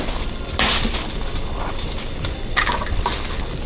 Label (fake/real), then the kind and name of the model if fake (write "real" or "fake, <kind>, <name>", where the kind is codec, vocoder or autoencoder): real